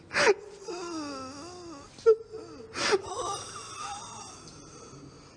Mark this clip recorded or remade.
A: recorded